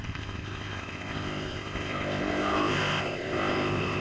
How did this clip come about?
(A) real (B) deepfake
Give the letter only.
B